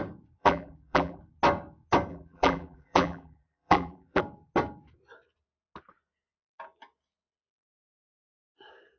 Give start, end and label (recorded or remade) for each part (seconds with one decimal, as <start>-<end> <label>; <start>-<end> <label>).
0.0-0.4 recorded; 0.4-1.2 remade; 1.2-2.1 recorded; 2.1-4.2 remade; 4.2-9.0 recorded